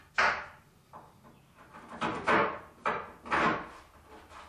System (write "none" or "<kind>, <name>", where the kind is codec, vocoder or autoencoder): none